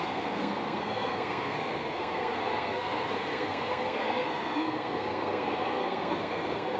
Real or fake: fake